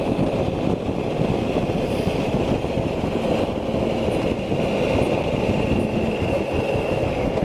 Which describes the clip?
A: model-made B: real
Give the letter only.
B